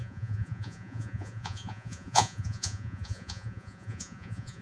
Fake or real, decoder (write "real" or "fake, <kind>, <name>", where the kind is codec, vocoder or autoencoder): fake, vocoder, Vocos